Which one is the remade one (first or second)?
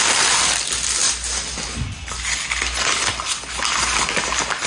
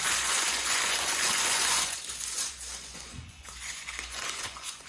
second